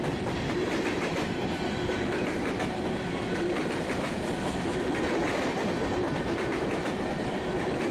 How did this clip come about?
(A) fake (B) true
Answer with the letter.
A